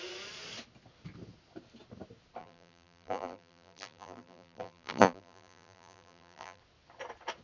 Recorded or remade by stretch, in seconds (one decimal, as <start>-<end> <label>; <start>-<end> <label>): 0.0-2.4 recorded; 2.4-6.6 remade; 6.6-7.4 recorded